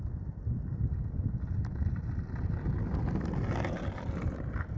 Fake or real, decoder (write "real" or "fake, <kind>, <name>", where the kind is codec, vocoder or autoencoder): real